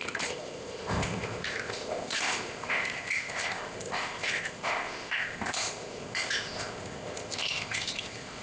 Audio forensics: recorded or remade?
remade